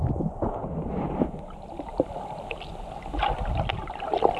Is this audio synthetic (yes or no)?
no